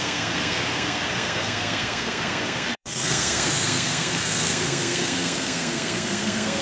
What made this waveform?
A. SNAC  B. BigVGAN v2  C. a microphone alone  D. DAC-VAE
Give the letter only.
A